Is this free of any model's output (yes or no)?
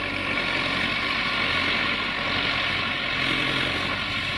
yes